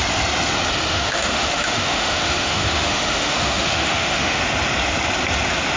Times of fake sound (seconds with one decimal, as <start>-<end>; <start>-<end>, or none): 0.9-4.4